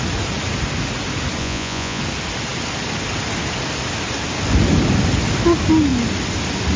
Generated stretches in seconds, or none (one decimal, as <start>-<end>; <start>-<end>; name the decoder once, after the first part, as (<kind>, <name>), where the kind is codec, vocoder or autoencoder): 1.4-2.0 (vocoder, Vocos)